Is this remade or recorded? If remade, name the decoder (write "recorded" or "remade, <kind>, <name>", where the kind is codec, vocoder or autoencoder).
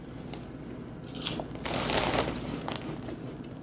recorded